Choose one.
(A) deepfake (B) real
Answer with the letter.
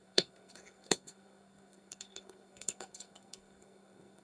A